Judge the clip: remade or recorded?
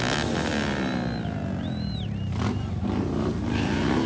recorded